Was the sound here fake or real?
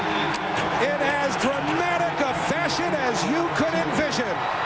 real